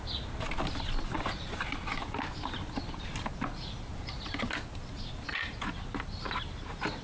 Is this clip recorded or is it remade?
recorded